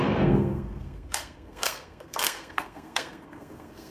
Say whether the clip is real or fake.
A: fake